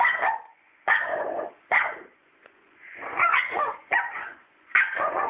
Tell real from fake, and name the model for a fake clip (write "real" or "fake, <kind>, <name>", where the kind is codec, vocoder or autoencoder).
fake, vocoder, Vocos